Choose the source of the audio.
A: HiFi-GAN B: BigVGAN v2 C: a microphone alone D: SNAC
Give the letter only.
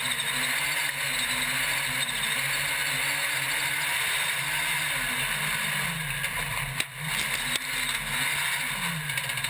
C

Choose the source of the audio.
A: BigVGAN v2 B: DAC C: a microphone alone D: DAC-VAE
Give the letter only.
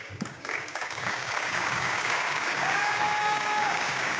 B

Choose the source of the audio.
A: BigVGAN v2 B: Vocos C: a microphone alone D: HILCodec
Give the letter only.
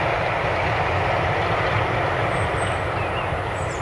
C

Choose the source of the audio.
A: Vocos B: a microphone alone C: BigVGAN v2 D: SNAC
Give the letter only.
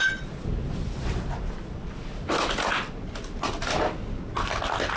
B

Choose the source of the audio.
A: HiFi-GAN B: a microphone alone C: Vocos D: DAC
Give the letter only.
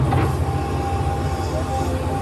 B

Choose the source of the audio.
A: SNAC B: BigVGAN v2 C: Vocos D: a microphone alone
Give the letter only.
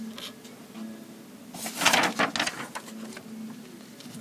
D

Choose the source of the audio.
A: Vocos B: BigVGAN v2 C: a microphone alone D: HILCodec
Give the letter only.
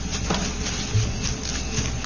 C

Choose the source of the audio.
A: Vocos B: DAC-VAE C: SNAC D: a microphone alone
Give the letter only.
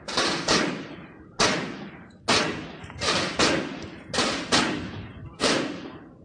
D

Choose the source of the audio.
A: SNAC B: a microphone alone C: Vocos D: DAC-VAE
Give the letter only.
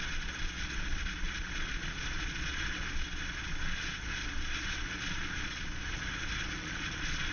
C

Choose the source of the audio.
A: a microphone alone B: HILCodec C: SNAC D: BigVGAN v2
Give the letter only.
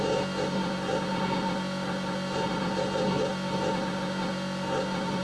C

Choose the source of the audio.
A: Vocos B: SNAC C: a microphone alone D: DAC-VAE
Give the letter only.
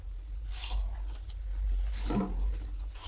C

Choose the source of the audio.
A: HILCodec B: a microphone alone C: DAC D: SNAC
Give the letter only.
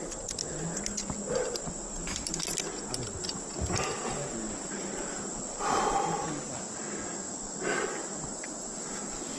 B